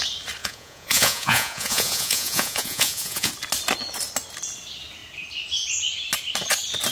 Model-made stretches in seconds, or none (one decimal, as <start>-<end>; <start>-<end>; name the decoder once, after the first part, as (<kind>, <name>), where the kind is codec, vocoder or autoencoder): 0.4-3.3 (vocoder, Vocos)